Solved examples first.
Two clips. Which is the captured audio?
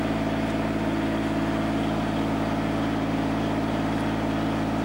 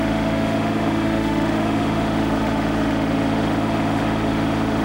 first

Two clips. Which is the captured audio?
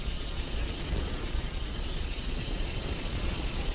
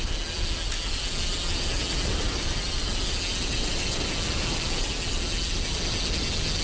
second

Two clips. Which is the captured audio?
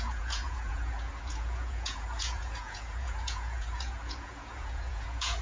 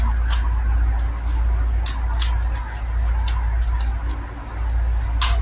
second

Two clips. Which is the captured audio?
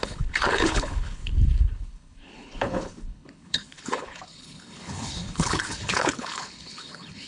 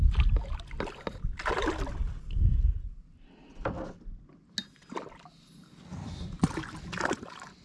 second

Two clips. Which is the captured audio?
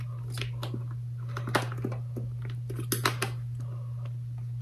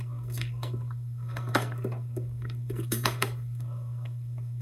first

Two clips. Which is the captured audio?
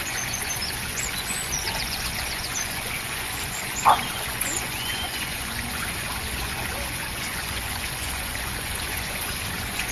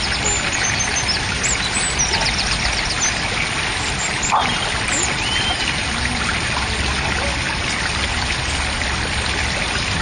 second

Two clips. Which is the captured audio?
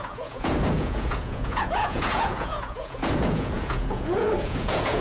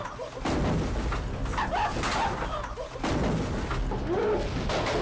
second